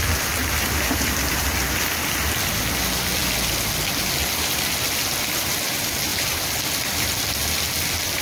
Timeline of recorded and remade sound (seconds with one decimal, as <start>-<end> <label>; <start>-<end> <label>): 0.0-0.4 recorded; 0.4-1.4 remade; 1.4-8.2 recorded